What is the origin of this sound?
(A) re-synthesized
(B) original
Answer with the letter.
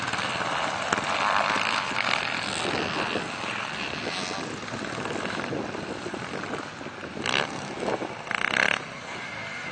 B